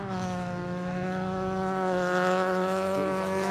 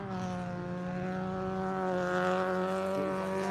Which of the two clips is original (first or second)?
second